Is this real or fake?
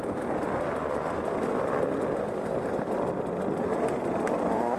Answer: real